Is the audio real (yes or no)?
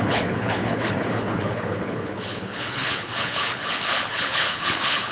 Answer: no